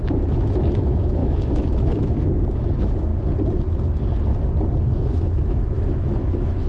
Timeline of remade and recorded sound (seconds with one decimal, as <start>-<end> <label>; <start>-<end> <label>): 0.0-3.1 remade; 3.1-4.9 recorded; 4.9-6.7 remade